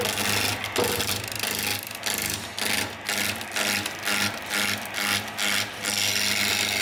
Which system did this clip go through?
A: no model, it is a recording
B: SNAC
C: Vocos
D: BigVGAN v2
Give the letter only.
A